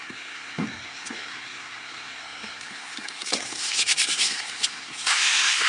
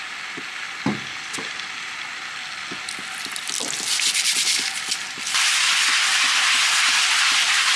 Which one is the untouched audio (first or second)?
second